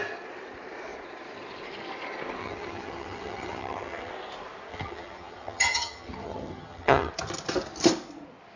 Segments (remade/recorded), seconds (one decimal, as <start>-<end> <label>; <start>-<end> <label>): 0.0-2.4 recorded; 2.4-4.1 remade; 4.1-4.7 recorded; 4.7-7.1 remade; 7.1-8.6 recorded